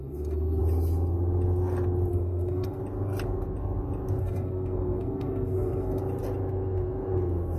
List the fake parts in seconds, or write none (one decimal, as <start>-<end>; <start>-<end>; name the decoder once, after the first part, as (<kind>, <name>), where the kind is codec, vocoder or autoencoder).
0.0-0.6 (codec, SNAC); 2.1-2.8; 4.2-6.0